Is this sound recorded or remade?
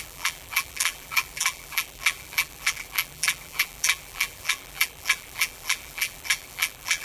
remade